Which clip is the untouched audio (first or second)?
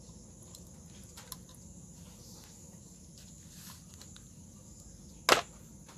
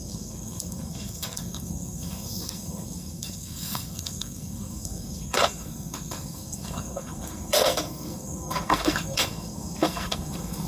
first